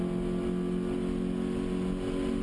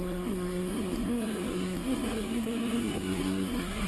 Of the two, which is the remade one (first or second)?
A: second